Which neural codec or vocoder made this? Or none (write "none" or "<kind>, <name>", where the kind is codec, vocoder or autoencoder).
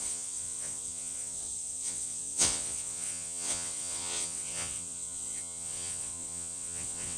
vocoder, WaveNeXt